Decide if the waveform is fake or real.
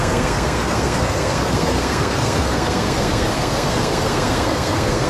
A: fake